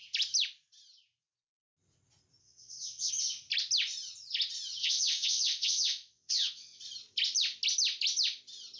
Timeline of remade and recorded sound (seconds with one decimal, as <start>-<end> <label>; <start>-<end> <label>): 0.0-2.4 recorded; 2.4-3.1 remade; 3.1-4.8 recorded; 4.8-6.8 remade; 6.8-8.8 recorded